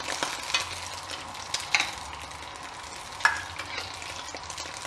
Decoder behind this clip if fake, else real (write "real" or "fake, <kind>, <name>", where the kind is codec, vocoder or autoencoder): real